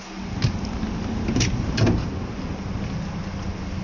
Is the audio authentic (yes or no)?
yes